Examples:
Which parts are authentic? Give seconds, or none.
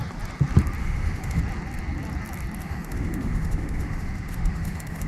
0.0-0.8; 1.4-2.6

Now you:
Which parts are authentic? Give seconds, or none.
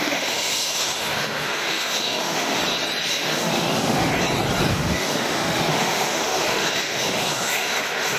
2.6-3.1; 4.1-4.7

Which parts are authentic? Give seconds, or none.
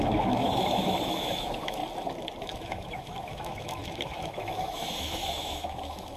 1.8-2.4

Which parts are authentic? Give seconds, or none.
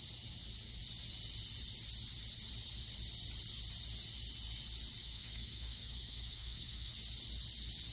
0.0-5.0; 6.9-7.9